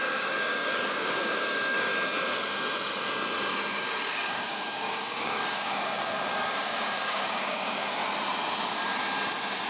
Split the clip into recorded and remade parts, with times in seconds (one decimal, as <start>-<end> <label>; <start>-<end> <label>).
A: 0.0-1.9 remade; 1.9-3.5 recorded; 3.5-8.0 remade; 8.0-9.7 recorded